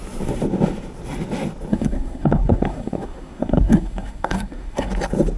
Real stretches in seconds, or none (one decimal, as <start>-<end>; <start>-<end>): 0.0-1.7; 4.9-5.4